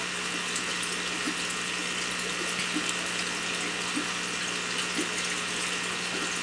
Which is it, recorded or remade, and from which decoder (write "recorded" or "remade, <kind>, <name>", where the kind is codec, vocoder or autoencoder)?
recorded